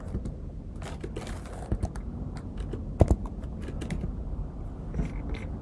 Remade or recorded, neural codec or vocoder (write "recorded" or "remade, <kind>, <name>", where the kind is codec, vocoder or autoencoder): recorded